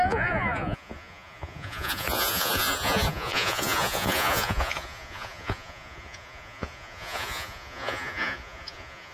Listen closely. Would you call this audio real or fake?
fake